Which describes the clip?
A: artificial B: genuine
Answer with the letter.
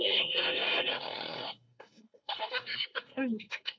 A